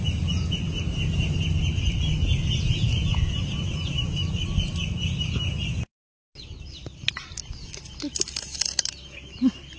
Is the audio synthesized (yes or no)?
no